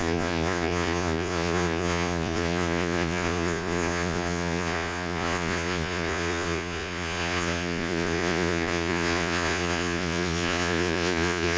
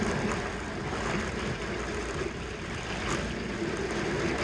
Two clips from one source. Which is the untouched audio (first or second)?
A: second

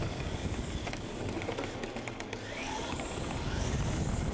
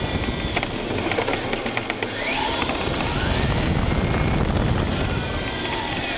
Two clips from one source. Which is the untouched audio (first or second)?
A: second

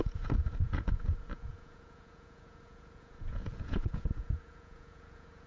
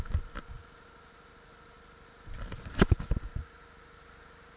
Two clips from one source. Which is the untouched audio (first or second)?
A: second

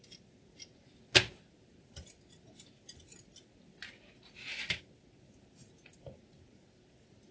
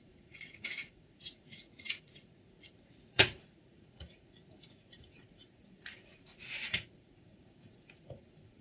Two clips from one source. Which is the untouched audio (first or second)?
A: first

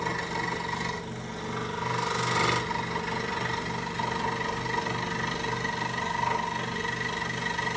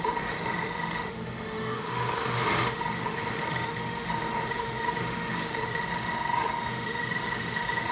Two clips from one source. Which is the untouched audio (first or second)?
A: first